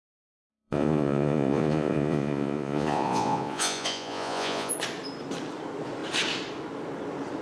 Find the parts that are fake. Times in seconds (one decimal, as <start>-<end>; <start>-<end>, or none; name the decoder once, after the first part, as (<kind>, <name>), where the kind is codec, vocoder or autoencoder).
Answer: 0.5-4.7 (vocoder, Vocos)